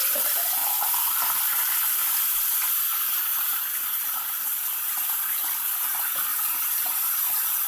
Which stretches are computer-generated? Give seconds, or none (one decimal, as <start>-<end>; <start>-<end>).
2.0-2.7; 3.3-4.9; 6.3-7.7